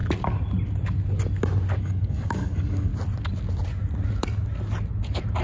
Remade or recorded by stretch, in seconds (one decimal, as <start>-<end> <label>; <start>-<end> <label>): 0.0-1.8 recorded; 1.8-2.9 remade; 2.9-5.4 recorded